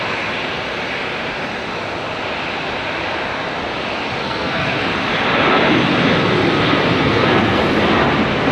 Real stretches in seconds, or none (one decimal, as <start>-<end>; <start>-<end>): 0.0-4.2; 4.8-7.0; 7.6-8.5